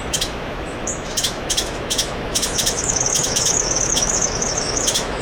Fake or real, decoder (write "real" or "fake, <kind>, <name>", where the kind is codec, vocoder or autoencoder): fake, autoencoder, DAC-VAE